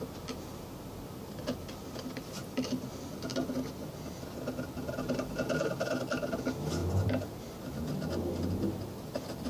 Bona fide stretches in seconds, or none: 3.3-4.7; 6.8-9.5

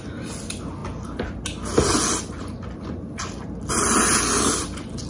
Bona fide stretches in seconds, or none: 0.0-5.1

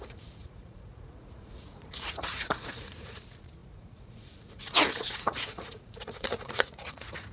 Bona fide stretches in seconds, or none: none

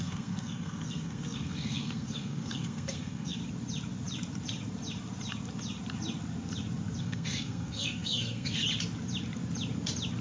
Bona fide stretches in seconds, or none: 3.4-7.0; 8.6-10.2

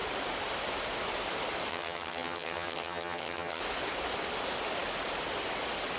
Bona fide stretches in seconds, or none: 0.0-1.7; 3.6-6.0

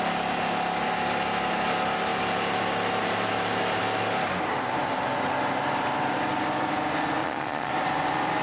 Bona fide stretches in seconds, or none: 0.0-7.2; 7.7-8.4

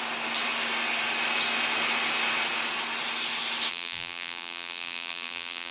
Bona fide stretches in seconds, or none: 0.0-3.7

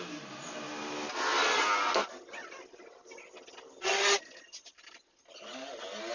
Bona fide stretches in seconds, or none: 0.0-6.1